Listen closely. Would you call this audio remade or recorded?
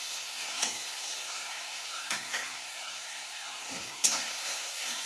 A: remade